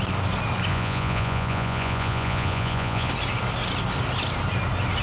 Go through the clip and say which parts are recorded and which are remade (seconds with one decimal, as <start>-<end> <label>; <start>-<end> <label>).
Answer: 0.0-0.7 recorded; 0.7-3.1 remade; 3.1-5.0 recorded